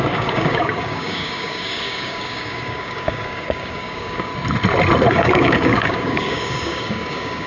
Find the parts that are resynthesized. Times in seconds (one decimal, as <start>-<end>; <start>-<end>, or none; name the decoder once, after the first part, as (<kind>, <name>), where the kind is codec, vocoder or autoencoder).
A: 0.0-4.3 (codec, DAC); 5.1-7.5